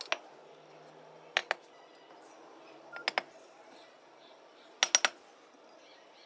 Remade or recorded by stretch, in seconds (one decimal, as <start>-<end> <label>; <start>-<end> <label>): 0.0-6.3 recorded